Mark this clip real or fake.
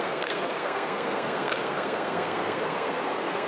fake